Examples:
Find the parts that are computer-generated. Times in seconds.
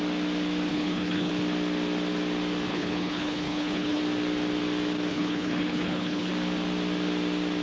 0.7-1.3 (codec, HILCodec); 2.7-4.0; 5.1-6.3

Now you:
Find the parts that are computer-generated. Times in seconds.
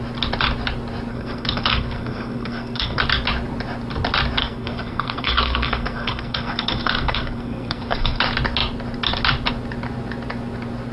1.1-3.0 (codec, SNAC); 4.4-8.2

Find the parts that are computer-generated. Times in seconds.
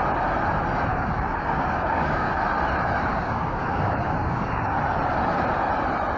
0.9-2.3 (codec, DAC); 3.1-4.8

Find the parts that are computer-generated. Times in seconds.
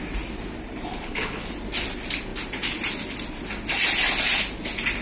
0.9-1.5 (codec, HILCodec)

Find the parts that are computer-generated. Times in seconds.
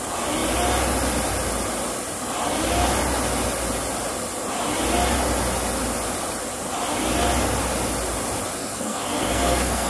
8.6-9.9 (codec, SNAC)